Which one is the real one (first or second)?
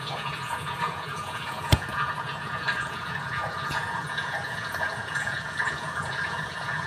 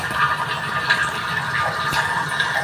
second